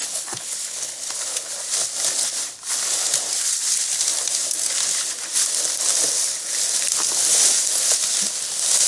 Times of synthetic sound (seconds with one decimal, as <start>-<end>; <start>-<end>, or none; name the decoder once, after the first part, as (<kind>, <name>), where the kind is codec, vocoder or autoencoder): 0.0-1.5 (codec, HILCodec)